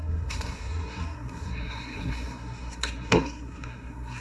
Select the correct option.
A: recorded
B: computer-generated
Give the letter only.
B